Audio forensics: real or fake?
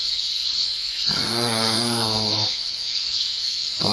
fake